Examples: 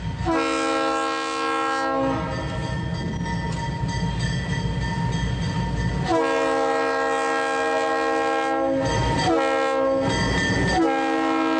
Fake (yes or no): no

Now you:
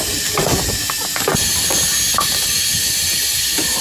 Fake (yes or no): no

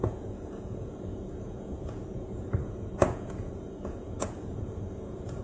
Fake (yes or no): yes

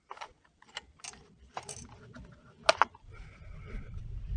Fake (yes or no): no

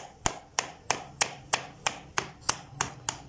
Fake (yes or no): no